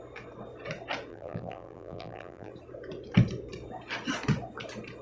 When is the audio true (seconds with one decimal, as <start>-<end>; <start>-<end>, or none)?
0.0-1.1; 2.5-5.0